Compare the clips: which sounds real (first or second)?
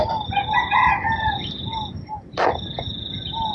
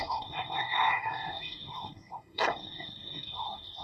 first